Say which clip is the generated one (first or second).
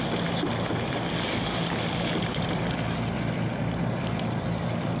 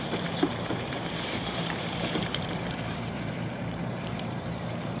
second